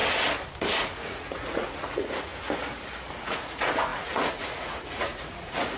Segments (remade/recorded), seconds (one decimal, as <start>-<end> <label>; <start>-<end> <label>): 0.0-0.8 recorded; 0.8-2.3 remade; 2.3-3.2 recorded; 3.2-5.8 remade